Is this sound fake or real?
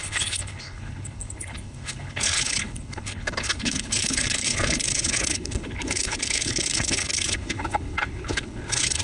fake